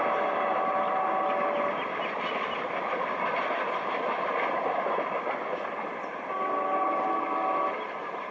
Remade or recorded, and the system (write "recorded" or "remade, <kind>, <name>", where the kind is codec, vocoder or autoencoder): recorded